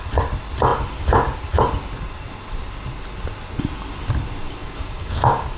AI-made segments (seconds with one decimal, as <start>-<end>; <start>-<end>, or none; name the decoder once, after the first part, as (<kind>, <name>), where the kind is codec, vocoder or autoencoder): 4.6-5.6 (codec, DAC)